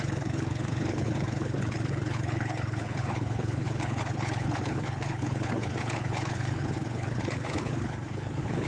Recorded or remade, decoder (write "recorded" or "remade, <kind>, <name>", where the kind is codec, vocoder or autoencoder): remade, codec, HILCodec